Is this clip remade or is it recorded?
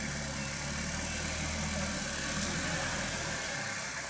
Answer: recorded